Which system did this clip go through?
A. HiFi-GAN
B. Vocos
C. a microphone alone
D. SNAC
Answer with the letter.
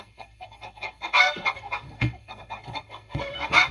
D